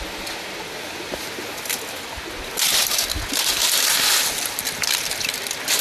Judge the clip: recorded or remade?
recorded